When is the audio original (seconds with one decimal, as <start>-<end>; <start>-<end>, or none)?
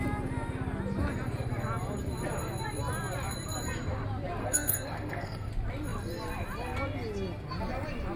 0.0-4.4; 5.5-8.2